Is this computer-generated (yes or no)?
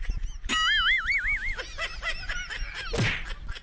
no